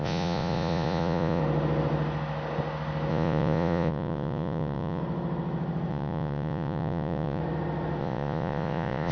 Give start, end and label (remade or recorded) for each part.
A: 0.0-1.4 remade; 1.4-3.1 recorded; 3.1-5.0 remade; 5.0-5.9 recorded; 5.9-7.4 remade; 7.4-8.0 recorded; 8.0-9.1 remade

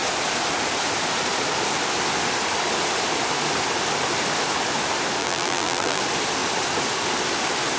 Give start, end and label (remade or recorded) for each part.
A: 0.0-5.2 recorded; 5.2-6.0 remade; 6.0-7.8 recorded

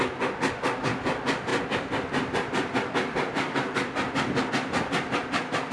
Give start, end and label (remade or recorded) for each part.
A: 0.0-5.7 recorded

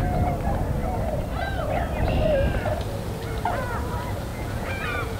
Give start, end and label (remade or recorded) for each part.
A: 0.0-4.3 recorded; 4.3-5.2 remade

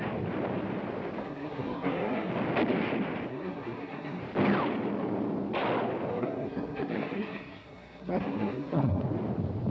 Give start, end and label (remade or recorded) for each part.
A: 0.0-1.2 recorded; 1.2-2.3 remade; 2.3-3.3 recorded; 3.3-4.2 remade; 4.2-6.1 recorded; 6.1-9.0 remade; 9.0-9.7 recorded

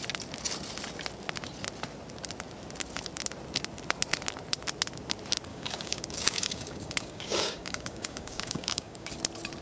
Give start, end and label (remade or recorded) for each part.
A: 0.0-5.5 recorded; 5.5-9.1 remade; 9.1-9.6 recorded

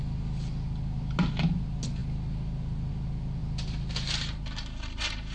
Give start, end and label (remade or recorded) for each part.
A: 0.0-5.3 recorded